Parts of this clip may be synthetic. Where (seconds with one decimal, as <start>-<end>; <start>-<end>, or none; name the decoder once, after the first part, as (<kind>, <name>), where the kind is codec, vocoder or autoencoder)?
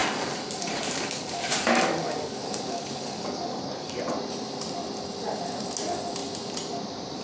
0.0-4.0 (codec, DAC)